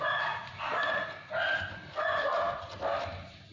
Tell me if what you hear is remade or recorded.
recorded